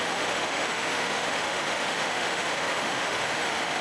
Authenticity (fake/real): fake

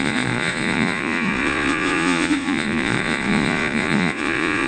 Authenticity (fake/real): fake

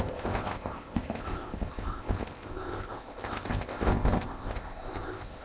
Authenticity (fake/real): fake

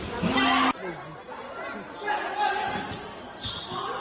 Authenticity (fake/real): real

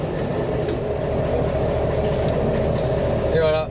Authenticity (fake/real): real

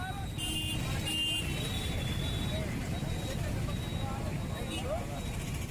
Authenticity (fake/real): real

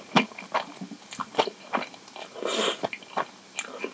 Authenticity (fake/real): real